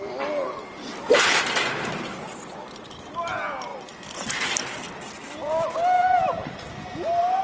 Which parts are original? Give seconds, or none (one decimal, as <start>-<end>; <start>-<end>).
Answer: 0.0-7.4